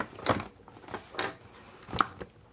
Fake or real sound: real